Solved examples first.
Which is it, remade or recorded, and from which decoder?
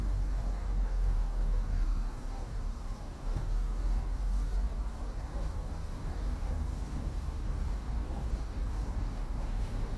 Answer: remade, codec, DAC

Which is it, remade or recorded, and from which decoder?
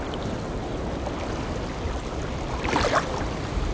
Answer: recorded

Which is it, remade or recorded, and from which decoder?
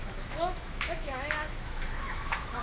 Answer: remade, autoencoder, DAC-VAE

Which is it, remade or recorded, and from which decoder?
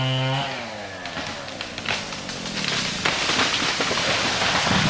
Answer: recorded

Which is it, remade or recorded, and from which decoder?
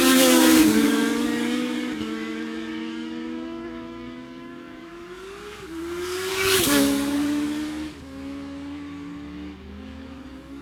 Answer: remade, codec, DAC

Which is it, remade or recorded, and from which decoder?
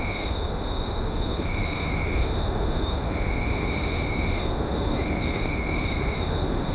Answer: remade, autoencoder, DAC-VAE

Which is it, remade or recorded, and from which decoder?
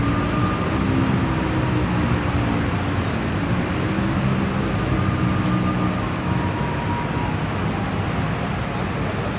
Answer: recorded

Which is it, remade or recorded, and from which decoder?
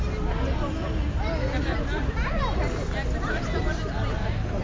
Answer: recorded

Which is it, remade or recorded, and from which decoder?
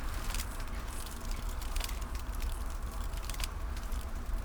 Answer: remade, vocoder, BigVGAN v2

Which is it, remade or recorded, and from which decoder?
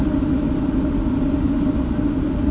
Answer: recorded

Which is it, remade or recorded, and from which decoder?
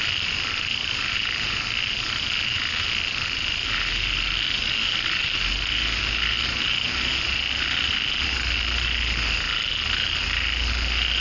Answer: recorded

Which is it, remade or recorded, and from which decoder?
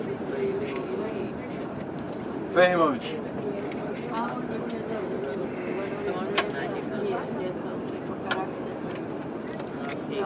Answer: recorded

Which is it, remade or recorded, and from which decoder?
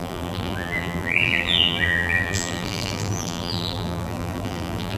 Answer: remade, vocoder, BigVGAN v2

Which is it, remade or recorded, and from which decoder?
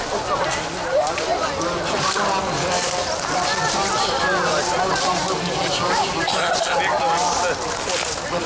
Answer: recorded